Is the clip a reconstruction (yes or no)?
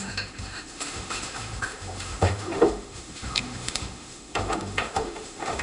yes